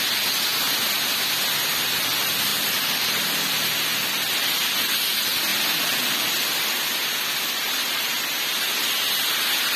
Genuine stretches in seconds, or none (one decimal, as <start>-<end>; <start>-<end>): 0.0-9.8